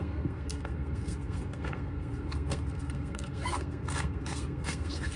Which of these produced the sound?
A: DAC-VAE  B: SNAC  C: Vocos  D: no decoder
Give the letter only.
B